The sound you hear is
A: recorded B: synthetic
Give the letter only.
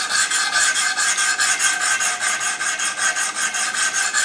A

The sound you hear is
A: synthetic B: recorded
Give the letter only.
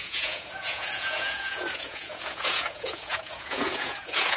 A